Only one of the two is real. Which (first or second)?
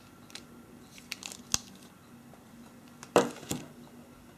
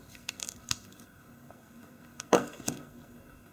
first